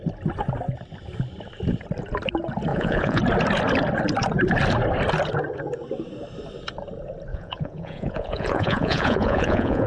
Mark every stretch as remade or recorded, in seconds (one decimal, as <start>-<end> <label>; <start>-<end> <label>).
0.0-2.7 recorded; 2.7-3.2 remade; 3.2-7.3 recorded; 7.3-9.9 remade

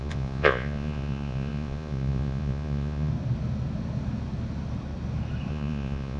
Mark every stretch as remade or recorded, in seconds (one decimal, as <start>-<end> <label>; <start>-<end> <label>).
0.0-3.1 remade; 3.1-5.5 recorded; 5.5-6.2 remade